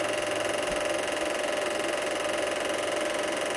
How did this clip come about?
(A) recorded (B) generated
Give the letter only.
A